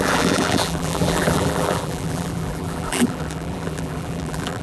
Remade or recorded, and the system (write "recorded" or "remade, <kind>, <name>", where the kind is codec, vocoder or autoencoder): remade, vocoder, BigVGAN v2